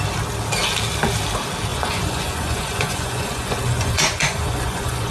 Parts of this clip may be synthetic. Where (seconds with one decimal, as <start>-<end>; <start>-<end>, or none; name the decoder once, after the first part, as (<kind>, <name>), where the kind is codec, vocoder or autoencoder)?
1.7-5.1 (vocoder, Vocos)